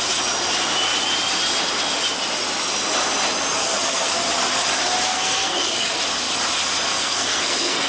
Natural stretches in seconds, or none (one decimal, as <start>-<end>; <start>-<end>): 0.0-3.6; 4.2-5.1; 6.0-6.9